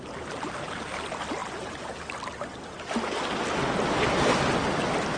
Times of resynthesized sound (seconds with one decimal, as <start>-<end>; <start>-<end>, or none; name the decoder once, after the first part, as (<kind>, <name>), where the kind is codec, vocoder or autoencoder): none